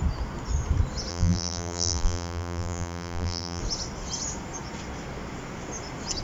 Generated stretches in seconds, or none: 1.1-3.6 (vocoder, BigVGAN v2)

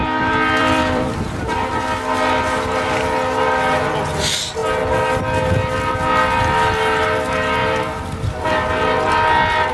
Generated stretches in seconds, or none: 0.6-1.7 (vocoder, BigVGAN v2); 7.6-8.5

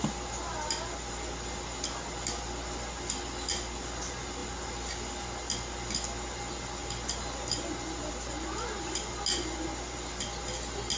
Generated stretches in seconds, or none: none

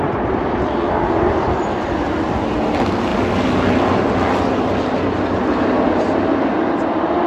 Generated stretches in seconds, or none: 0.0-2.0 (vocoder, BigVGAN v2)

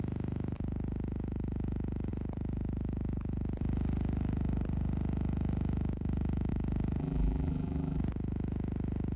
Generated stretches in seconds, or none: 7.0-8.0 (vocoder, BigVGAN v2)